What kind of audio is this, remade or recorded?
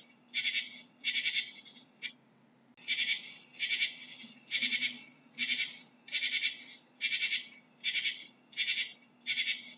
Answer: recorded